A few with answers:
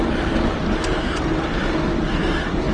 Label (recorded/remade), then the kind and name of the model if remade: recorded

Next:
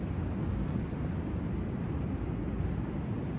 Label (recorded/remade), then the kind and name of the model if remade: recorded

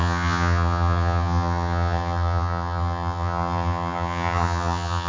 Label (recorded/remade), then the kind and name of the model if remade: remade, vocoder, HiFi-GAN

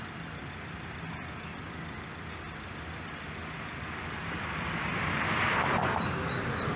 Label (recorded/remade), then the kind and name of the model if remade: recorded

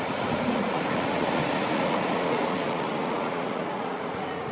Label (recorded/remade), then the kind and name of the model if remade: remade, vocoder, Vocos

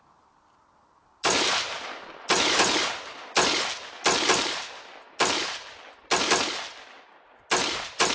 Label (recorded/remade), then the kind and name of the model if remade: recorded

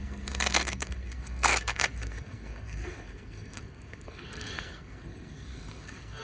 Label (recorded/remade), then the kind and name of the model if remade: remade, codec, SNAC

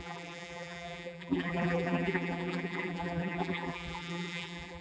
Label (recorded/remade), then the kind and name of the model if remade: remade, vocoder, BigVGAN v2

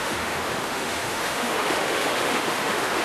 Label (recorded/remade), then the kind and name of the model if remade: remade, autoencoder, DAC-VAE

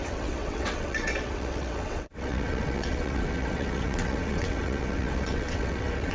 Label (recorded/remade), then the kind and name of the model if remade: remade, vocoder, WaveNeXt